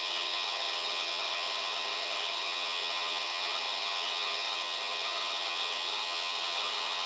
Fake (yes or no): yes